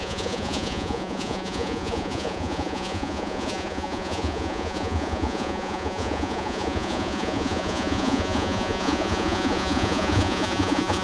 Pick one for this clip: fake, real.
fake